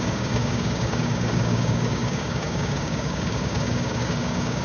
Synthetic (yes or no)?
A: yes